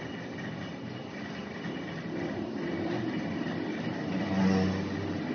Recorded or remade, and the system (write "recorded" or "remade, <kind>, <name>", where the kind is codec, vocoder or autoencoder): remade, vocoder, BigVGAN v2